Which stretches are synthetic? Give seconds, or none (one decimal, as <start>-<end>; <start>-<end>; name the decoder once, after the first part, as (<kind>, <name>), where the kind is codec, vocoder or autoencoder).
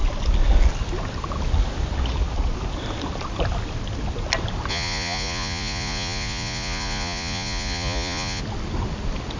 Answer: 4.7-8.4 (vocoder, Vocos)